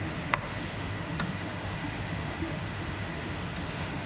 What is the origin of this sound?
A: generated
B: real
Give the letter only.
A